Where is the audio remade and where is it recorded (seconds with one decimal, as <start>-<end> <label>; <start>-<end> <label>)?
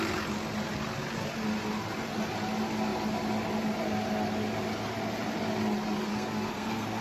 0.0-6.1 recorded; 6.1-7.0 remade